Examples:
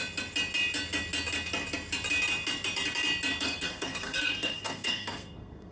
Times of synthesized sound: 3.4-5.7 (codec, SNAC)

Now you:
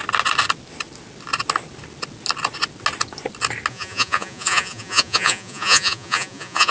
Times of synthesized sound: 3.7-6.7 (vocoder, Vocos)

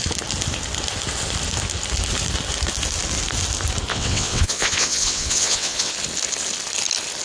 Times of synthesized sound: 3.9-5.9 (vocoder, WaveNeXt)